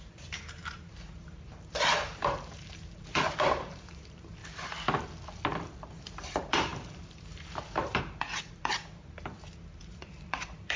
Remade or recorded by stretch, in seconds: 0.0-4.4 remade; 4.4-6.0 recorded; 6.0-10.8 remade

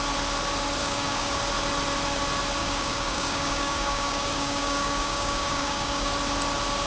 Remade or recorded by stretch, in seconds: 0.0-0.8 recorded; 0.8-1.4 remade; 1.4-2.6 recorded; 2.6-6.1 remade; 6.1-6.9 recorded

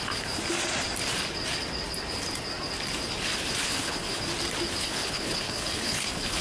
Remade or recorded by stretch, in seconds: 0.0-3.6 recorded; 3.6-4.2 remade; 4.2-4.8 recorded; 4.8-6.4 remade

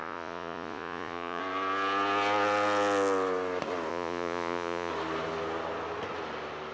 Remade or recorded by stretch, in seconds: 0.0-1.4 remade; 1.4-3.9 recorded; 3.9-4.9 remade; 4.9-6.7 recorded

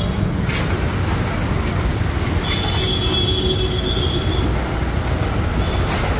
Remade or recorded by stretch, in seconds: 0.0-6.2 recorded